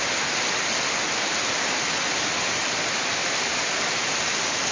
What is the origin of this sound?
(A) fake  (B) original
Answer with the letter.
B